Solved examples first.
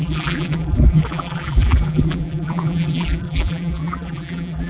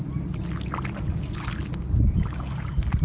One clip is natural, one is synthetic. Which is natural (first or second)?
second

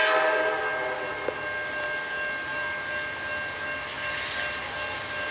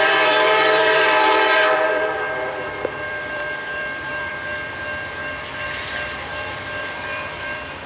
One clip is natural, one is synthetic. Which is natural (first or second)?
first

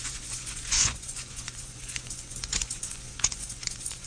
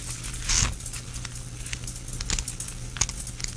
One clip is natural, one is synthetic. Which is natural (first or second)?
second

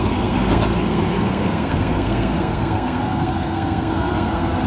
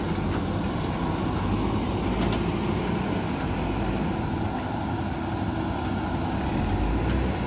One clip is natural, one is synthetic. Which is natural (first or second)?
second